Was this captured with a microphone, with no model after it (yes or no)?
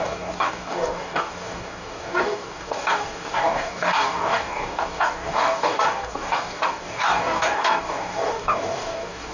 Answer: no